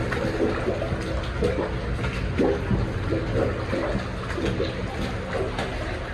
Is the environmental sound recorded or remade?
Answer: recorded